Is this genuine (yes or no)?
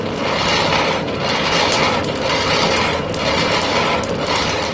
yes